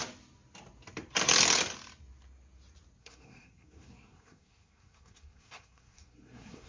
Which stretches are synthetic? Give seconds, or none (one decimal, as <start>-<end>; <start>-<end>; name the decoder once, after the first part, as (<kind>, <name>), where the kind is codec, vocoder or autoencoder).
3.0-6.7 (codec, SNAC)